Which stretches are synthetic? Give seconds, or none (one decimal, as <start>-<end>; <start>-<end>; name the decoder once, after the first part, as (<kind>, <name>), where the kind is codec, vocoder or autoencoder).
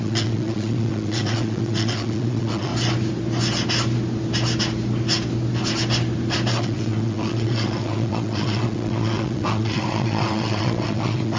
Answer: 0.0-2.7 (vocoder, WaveNeXt); 6.5-11.4